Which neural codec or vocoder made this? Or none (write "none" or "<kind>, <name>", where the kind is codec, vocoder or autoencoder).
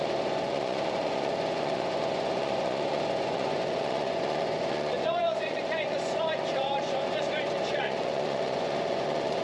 vocoder, Vocos